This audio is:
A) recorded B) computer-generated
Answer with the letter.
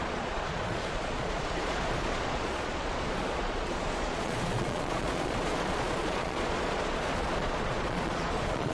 B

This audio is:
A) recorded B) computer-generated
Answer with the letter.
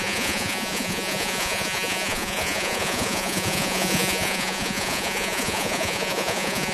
B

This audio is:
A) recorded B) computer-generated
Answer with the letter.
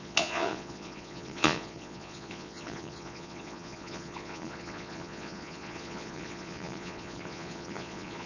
B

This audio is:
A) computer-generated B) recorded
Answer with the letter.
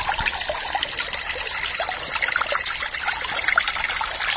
B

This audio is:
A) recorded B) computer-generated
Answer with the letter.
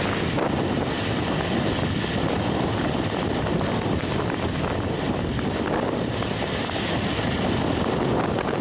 A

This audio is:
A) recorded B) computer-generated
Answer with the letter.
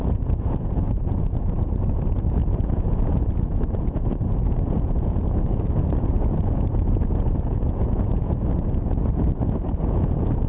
B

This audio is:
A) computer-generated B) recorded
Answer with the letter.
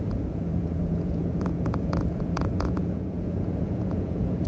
A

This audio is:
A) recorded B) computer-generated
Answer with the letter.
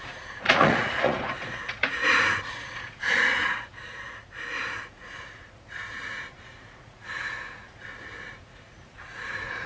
B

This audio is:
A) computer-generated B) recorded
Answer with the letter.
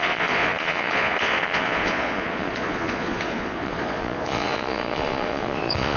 A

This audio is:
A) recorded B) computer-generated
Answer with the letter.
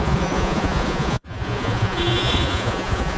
B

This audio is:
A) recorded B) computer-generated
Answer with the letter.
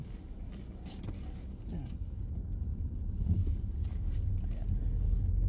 A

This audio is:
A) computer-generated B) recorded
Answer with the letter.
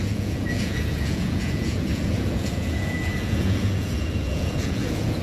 A